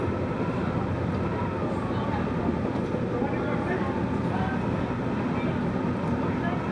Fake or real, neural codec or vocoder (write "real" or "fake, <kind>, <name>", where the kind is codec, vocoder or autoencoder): real